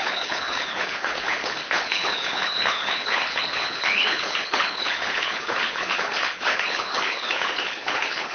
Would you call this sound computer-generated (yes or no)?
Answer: yes